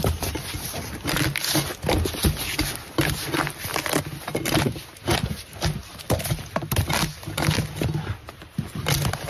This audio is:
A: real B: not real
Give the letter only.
A